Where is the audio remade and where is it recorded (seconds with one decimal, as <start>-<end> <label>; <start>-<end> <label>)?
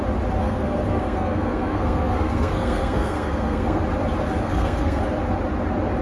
0.0-0.4 recorded; 0.4-3.8 remade; 3.8-4.4 recorded; 4.4-5.0 remade; 5.0-6.0 recorded